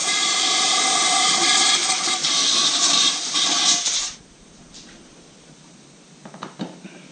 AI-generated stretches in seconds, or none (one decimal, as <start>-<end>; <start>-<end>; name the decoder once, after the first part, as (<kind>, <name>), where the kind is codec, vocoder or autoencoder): 0.0-3.6 (vocoder, BigVGAN v2); 4.0-4.6